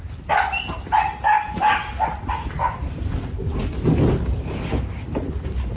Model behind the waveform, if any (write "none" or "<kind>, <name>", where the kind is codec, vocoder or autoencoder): none